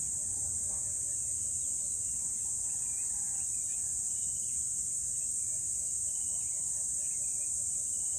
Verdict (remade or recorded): recorded